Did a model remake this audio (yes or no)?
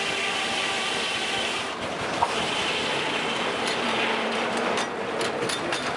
yes